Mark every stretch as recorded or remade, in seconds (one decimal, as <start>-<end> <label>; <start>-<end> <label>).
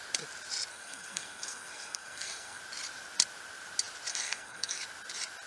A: 0.0-0.7 recorded; 0.7-2.6 remade; 2.6-4.1 recorded; 4.1-4.8 remade; 4.8-5.5 recorded